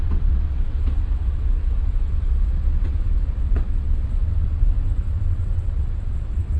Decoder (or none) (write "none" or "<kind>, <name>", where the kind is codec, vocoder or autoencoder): vocoder, WaveNeXt